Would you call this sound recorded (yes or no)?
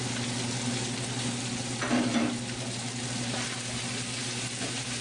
yes